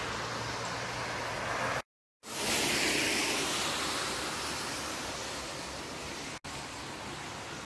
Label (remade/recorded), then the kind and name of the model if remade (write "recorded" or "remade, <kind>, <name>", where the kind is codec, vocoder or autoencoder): recorded